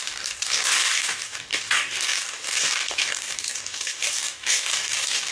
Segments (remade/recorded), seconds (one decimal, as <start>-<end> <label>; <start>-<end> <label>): 0.0-5.3 remade